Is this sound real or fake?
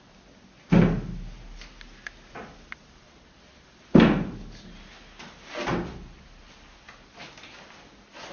real